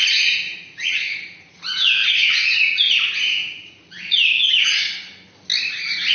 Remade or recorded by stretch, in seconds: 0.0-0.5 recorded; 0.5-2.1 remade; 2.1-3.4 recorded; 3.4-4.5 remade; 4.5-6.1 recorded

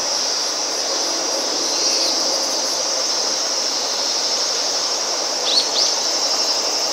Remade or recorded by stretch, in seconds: 0.0-5.5 remade; 5.5-6.9 recorded